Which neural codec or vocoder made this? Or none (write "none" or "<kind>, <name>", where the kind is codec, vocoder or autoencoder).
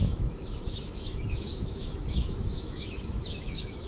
autoencoder, DAC-VAE